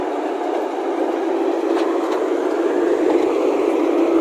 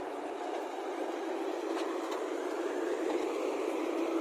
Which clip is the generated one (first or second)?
second